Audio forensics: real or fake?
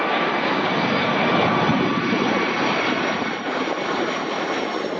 real